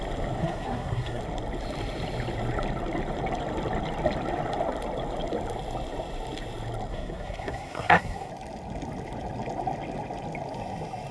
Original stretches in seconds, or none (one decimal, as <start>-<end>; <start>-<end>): 0.0-0.4; 1.2-6.9; 8.3-11.1